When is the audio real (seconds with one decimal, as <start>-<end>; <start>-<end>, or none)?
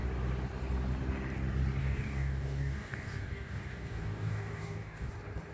0.0-1.8; 5.1-5.5